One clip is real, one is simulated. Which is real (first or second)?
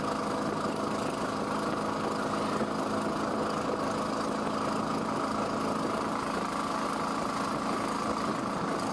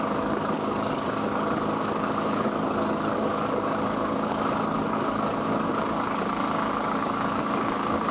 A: first